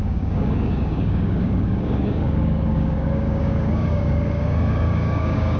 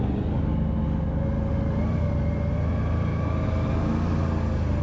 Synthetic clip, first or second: first